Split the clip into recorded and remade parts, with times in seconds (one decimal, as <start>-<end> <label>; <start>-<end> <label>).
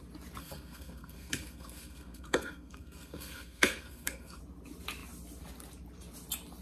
0.0-0.4 recorded; 0.4-4.4 remade; 4.4-6.6 recorded